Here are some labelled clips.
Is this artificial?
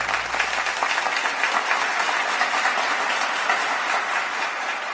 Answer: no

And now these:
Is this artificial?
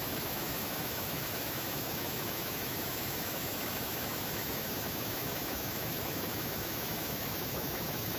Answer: yes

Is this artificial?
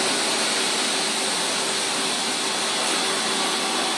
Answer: no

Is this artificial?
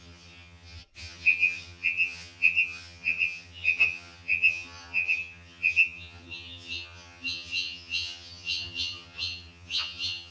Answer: yes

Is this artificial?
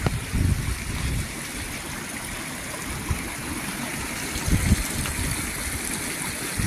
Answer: no